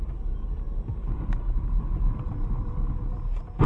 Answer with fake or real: real